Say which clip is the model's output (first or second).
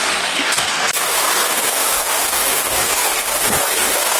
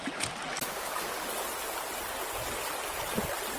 first